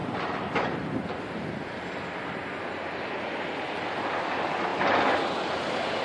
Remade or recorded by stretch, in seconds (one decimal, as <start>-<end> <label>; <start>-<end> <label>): 0.0-6.0 recorded